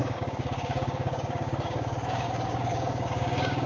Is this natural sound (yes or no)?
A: no